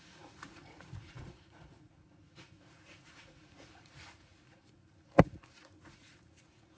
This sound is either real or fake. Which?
fake